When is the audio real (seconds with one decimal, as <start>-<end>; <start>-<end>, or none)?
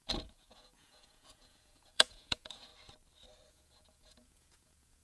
2.7-3.5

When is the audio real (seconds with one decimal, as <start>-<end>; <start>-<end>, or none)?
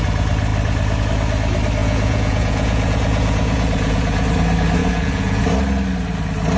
0.0-1.8; 4.3-4.8; 5.4-6.6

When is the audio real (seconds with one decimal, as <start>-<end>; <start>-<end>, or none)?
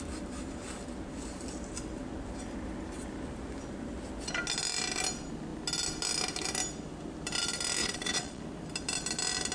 0.0-7.8; 8.4-9.5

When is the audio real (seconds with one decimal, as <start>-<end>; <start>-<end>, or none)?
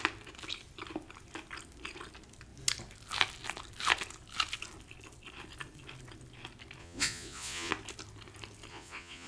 0.0-6.8; 7.7-8.7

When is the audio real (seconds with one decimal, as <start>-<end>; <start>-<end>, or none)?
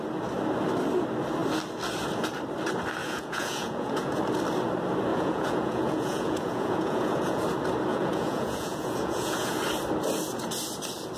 0.0-3.0; 4.2-5.1; 7.4-7.9; 9.6-11.2